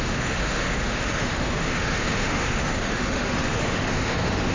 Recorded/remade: remade